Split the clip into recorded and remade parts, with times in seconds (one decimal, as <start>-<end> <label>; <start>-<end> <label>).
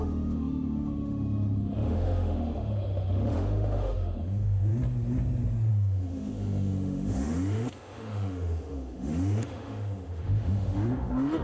0.0-4.7 remade; 4.7-5.7 recorded; 5.7-11.4 remade